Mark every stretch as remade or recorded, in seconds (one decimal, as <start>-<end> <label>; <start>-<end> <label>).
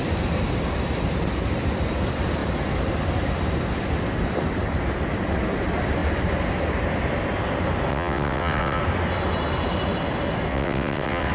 0.0-7.9 recorded; 7.9-8.8 remade; 8.8-10.5 recorded; 10.5-11.3 remade